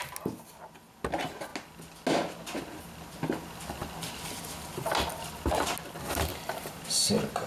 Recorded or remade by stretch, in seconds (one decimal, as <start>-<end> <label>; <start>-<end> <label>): 0.0-6.3 recorded; 6.3-6.8 remade; 6.8-7.5 recorded